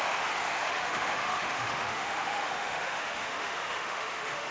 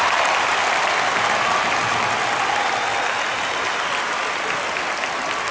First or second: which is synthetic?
first